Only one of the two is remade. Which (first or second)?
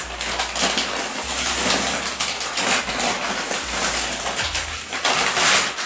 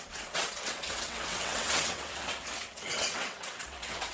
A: second